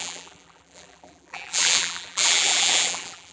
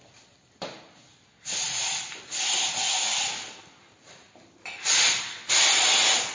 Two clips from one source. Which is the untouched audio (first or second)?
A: second